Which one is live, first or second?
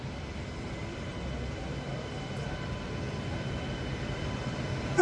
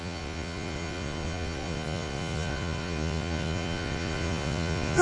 first